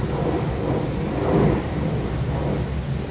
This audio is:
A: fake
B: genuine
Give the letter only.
B